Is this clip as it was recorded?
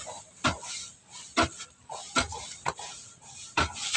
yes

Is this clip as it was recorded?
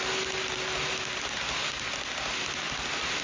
yes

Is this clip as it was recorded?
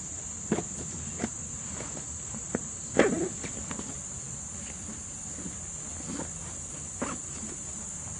yes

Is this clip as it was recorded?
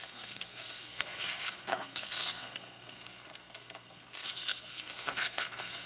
no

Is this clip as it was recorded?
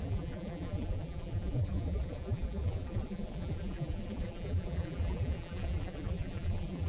no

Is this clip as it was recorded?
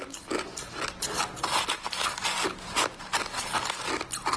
yes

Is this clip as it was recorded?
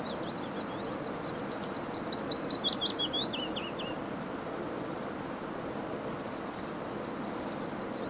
yes